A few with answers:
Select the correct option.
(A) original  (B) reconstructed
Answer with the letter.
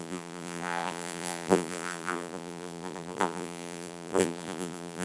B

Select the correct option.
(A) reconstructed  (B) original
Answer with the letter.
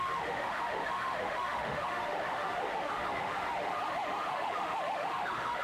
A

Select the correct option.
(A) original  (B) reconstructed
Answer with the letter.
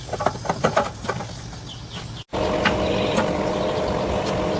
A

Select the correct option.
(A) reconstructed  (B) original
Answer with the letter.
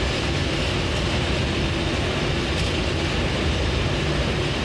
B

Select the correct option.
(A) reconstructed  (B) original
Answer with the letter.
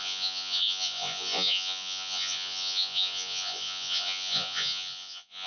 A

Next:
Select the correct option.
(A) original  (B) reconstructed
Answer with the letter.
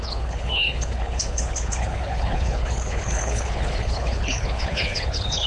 B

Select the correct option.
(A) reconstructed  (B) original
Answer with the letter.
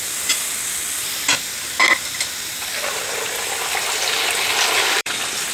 A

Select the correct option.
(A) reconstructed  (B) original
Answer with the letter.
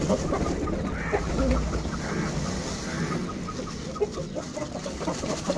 B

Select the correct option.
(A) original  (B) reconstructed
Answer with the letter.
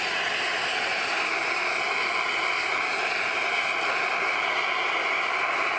A